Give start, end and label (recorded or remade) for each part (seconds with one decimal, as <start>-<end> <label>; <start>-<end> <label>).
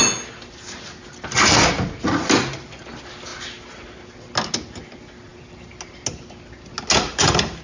0.0-7.6 recorded